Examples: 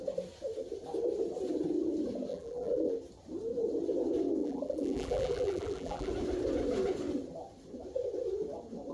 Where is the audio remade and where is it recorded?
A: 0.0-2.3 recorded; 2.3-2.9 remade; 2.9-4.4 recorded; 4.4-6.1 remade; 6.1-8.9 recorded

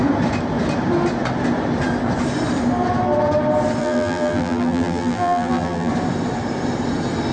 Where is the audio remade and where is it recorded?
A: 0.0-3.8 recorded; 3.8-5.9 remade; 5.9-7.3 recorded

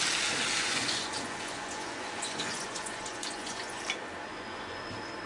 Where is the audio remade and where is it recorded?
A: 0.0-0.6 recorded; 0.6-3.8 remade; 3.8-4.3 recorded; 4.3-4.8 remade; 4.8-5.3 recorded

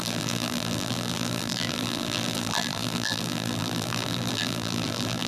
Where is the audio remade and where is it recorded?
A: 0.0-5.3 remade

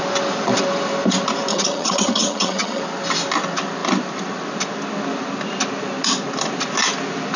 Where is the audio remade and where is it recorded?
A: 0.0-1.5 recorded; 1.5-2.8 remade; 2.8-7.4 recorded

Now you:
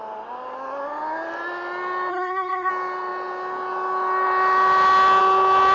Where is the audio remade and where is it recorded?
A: 0.0-2.1 recorded; 2.1-2.7 remade; 2.7-5.7 recorded